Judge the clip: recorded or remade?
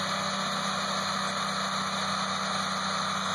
recorded